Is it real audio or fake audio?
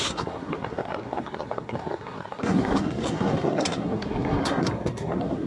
fake